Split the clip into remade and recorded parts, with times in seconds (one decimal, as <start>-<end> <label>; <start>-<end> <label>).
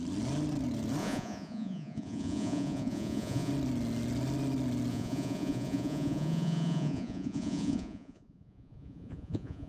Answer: 0.0-1.0 recorded; 1.0-3.5 remade; 3.5-4.9 recorded; 4.9-9.7 remade